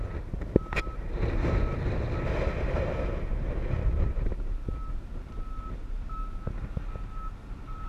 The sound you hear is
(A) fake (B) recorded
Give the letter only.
B